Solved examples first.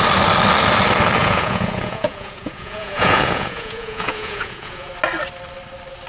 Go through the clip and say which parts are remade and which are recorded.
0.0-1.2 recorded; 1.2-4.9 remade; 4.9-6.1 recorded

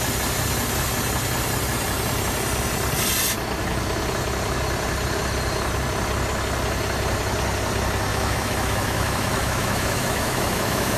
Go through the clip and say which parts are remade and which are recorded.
0.0-8.1 recorded; 8.1-11.0 remade

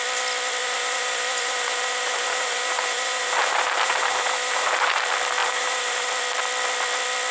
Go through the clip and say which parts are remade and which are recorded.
0.0-0.6 recorded; 0.6-5.0 remade; 5.0-5.4 recorded; 5.4-6.1 remade; 6.1-7.3 recorded